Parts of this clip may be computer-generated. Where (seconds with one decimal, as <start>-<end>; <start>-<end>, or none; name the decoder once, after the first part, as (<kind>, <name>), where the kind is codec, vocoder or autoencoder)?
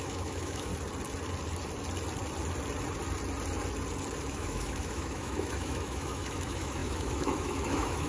0.0-0.7 (autoencoder, DAC-VAE); 4.2-8.1